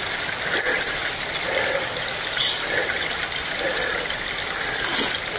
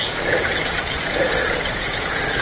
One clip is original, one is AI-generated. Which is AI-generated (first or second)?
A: second